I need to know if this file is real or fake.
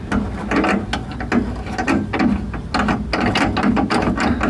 real